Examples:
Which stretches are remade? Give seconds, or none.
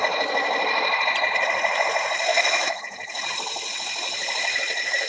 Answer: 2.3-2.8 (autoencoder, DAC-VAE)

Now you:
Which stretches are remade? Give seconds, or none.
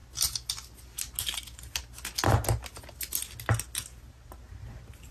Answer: none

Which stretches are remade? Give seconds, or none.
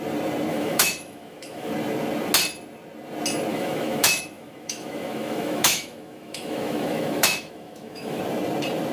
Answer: 0.5-1.7 (autoencoder, DAC-VAE); 3.5-8.2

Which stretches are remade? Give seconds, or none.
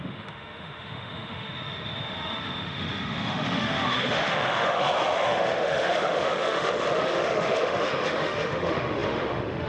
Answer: 0.0-9.7 (autoencoder, DAC-VAE)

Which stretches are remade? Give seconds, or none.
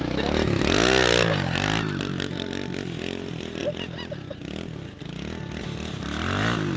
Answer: 0.0-0.6 (autoencoder, DAC-VAE)